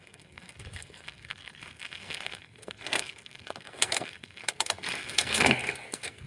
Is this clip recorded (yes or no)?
no